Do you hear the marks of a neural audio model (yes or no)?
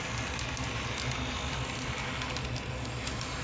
no